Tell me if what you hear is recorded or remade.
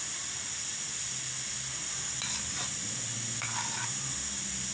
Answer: recorded